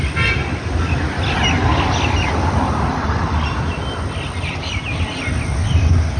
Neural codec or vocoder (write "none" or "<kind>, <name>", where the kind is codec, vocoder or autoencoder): none